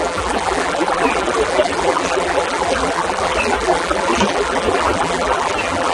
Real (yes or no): no